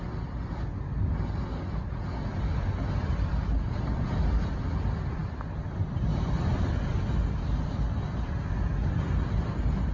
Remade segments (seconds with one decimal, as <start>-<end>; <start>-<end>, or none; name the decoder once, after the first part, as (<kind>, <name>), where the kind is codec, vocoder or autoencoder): none